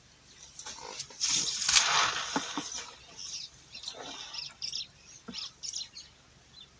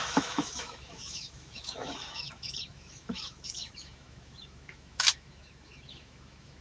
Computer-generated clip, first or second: second